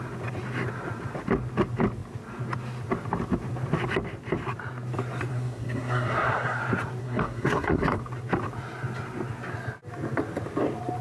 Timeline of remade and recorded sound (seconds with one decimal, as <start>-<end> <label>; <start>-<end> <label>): 0.0-5.3 recorded; 5.3-6.6 remade; 6.6-7.0 recorded; 7.0-8.0 remade; 8.0-11.0 recorded